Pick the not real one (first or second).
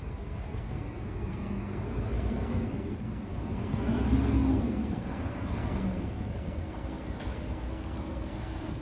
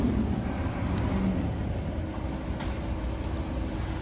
first